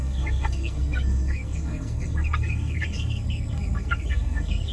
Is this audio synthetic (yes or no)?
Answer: yes